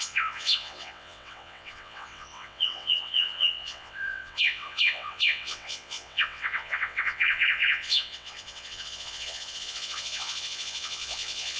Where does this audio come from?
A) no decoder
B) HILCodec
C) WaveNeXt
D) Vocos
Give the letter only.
C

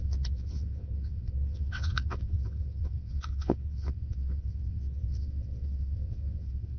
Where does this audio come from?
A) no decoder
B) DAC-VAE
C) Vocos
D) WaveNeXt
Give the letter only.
D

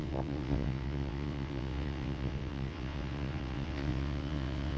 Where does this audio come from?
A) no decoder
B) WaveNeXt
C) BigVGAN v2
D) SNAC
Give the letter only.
B